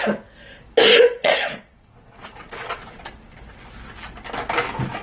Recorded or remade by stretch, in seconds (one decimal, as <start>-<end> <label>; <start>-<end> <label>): 0.0-1.2 recorded; 1.2-3.1 remade; 3.1-5.0 recorded